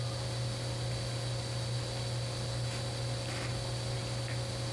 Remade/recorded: recorded